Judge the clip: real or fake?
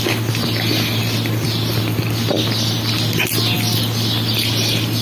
real